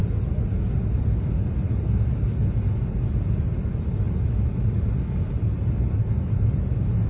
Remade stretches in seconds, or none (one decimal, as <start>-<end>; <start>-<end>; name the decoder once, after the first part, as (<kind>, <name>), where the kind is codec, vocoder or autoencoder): none